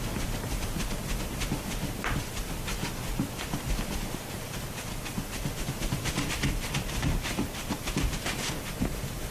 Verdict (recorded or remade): remade